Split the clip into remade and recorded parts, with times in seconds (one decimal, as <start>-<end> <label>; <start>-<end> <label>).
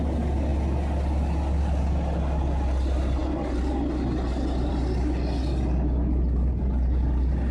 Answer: 0.0-7.5 recorded